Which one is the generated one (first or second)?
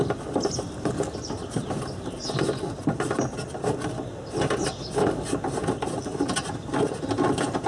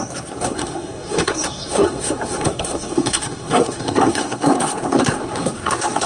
second